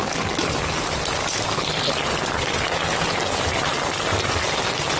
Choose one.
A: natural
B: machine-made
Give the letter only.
A